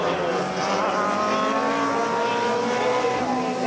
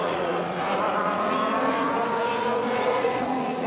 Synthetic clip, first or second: second